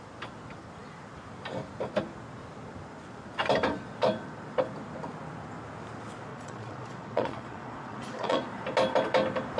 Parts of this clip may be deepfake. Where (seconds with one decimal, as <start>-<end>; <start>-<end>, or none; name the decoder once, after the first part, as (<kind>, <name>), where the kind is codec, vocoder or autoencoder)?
6.3-8.4 (vocoder, Vocos)

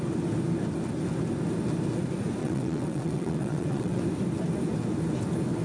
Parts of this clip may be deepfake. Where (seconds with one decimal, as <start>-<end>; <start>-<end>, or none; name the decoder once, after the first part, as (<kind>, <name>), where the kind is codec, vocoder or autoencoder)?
2.4-4.0 (vocoder, WaveNeXt)

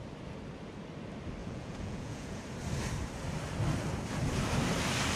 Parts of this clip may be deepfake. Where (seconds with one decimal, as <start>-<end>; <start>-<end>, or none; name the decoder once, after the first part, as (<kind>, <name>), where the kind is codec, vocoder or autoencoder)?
1.4-2.4 (vocoder, Vocos)

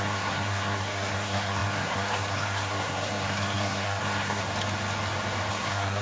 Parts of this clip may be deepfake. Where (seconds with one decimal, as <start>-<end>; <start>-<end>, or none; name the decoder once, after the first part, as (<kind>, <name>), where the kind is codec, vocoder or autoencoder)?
0.0-4.4 (codec, SNAC); 5.5-6.0

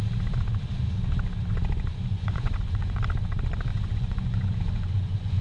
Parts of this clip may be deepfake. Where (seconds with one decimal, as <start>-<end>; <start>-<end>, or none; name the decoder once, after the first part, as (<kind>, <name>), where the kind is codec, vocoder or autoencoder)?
1.9-3.0 (vocoder, Vocos); 3.7-5.4

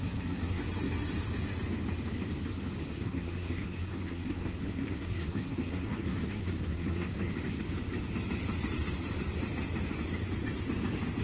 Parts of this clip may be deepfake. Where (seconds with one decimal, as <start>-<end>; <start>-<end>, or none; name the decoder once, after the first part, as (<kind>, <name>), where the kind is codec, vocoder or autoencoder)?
0.0-0.6 (codec, SNAC); 2.9-7.3

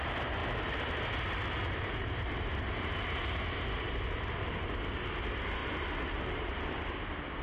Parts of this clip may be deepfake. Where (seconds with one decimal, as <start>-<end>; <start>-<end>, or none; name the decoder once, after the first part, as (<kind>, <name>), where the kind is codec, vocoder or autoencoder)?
none

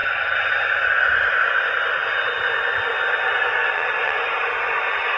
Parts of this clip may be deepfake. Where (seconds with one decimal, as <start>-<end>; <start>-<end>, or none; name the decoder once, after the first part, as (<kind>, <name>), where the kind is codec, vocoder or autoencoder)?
3.6-4.2 (vocoder, WaveNeXt)